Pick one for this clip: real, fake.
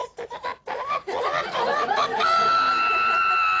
real